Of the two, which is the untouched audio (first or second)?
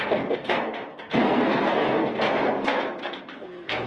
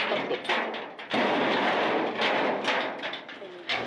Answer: second